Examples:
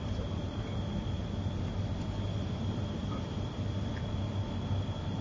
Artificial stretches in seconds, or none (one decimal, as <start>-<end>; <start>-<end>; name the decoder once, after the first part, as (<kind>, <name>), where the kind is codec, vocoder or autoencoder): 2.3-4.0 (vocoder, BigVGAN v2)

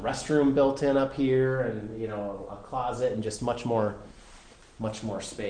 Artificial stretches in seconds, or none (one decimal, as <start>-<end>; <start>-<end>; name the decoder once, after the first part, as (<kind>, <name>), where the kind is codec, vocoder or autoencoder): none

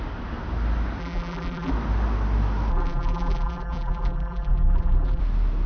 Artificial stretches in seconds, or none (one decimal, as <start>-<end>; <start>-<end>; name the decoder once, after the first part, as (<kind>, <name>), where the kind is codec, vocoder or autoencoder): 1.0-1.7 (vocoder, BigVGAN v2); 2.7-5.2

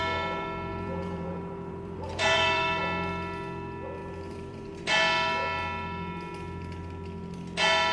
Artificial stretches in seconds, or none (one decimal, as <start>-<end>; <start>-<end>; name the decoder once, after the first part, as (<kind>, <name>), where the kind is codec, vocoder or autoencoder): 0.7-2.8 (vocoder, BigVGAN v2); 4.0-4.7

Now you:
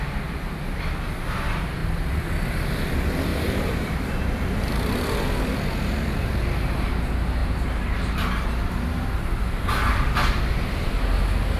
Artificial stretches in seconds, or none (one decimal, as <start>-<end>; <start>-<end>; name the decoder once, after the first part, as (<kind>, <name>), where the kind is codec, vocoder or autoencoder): 1.8-2.3 (vocoder, BigVGAN v2); 3.3-6.9; 7.4-8.3

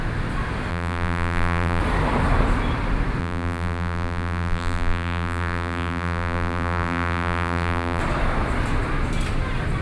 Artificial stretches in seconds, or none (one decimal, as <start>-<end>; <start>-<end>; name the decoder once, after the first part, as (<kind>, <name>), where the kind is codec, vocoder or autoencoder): 0.7-1.8 (vocoder, BigVGAN v2); 3.2-8.0

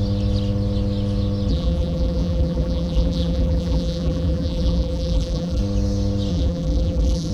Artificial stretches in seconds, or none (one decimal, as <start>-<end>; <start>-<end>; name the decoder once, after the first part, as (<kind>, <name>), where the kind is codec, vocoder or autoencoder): 1.5-5.6 (vocoder, BigVGAN v2); 6.3-7.3

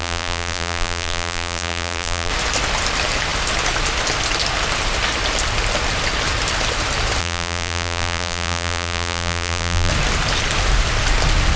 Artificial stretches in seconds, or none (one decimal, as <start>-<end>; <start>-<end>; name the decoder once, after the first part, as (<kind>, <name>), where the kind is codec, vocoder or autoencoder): 0.0-2.3 (vocoder, BigVGAN v2); 7.2-9.9